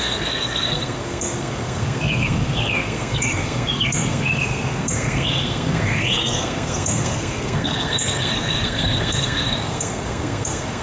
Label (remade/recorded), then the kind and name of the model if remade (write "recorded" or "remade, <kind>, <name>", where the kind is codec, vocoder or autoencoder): remade, codec, SNAC